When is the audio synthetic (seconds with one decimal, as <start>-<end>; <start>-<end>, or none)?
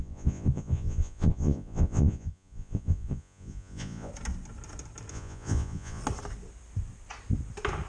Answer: 0.0-4.1; 5.1-6.0